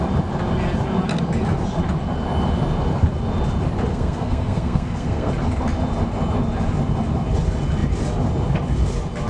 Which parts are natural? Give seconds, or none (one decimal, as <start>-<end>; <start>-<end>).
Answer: 0.0-3.9; 5.3-9.3